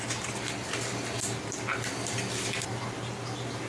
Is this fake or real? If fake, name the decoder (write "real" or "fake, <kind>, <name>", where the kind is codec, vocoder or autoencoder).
real